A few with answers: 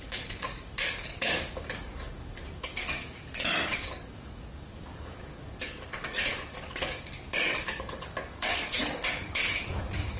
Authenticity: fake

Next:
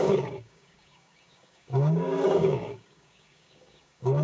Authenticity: fake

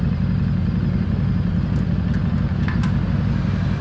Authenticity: real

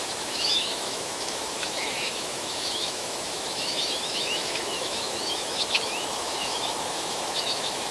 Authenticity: fake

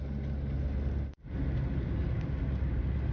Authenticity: real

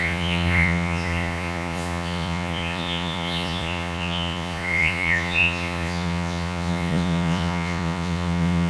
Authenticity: fake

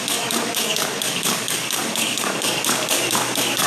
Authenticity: fake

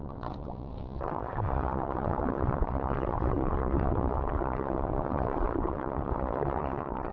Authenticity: fake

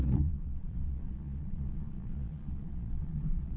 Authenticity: fake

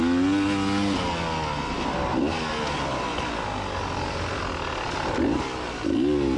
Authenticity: real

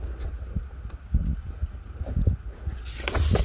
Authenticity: real